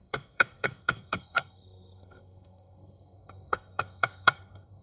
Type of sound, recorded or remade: remade